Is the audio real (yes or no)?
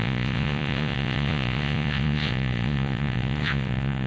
no